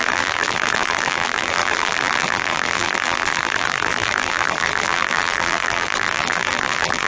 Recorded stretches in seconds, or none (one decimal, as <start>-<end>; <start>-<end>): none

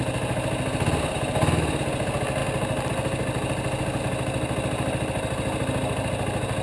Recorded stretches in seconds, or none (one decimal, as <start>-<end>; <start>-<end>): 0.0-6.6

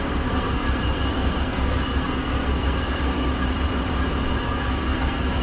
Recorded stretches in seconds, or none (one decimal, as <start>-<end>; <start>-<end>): 3.3-4.4